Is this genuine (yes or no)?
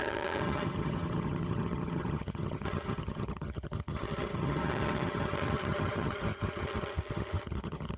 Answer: no